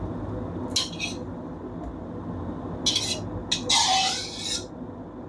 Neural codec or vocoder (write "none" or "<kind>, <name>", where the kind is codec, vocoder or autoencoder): none